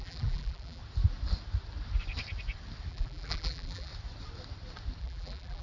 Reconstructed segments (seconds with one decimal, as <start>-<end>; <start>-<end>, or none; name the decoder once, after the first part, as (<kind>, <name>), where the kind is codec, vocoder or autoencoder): 0.0-0.8 (vocoder, BigVGAN v2); 2.9-3.9; 5.0-5.6